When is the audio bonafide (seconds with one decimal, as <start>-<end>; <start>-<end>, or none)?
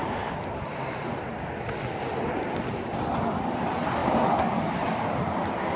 none